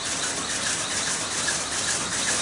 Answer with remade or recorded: recorded